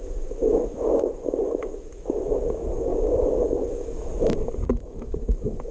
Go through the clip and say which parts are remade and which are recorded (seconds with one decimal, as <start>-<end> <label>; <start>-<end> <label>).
0.0-4.1 remade; 4.1-4.7 recorded; 4.7-5.7 remade